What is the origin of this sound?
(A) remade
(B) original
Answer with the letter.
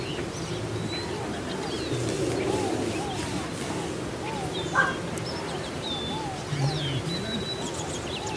B